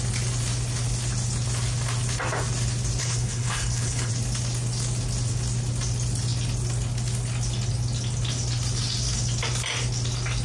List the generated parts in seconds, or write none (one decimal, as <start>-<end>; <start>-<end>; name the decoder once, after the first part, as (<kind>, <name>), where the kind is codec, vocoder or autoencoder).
3.0-4.1 (codec, HILCodec)

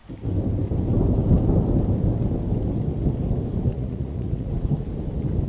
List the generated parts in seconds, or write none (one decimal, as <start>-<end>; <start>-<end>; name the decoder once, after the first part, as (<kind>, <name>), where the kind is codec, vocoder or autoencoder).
3.7-4.5 (vocoder, Vocos)

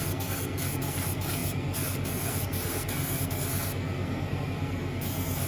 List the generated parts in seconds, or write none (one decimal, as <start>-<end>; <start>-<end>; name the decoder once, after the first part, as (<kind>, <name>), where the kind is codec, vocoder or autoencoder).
0.0-5.5 (codec, SNAC)

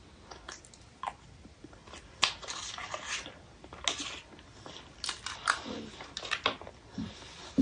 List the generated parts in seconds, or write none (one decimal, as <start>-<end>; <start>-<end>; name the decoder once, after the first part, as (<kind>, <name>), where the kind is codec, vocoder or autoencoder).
none